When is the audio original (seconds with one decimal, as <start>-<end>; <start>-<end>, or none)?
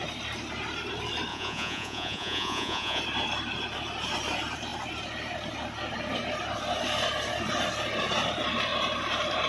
0.0-1.3; 3.0-9.5